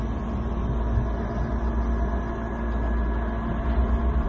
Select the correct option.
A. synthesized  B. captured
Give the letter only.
B